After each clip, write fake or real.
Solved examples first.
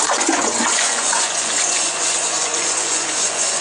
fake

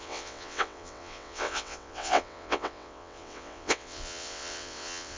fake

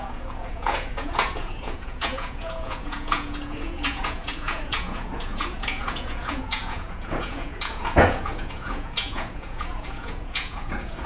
fake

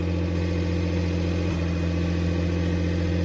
real